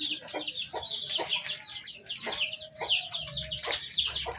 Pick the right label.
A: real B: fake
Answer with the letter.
A